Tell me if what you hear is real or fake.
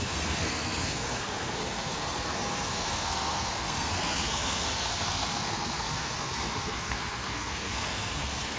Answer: fake